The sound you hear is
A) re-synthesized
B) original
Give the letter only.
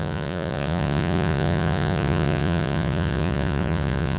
A